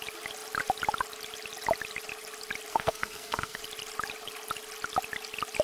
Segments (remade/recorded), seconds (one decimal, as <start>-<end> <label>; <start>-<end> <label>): 0.0-2.7 recorded; 2.7-3.6 remade; 3.6-5.6 recorded